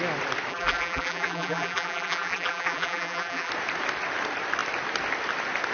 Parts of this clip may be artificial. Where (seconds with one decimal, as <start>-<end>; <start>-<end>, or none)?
0.5-3.5